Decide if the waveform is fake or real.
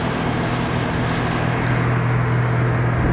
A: real